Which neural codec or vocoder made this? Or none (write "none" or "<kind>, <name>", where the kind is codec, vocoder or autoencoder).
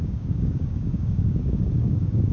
codec, DAC